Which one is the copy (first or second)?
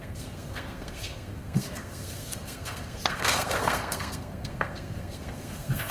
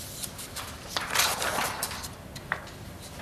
first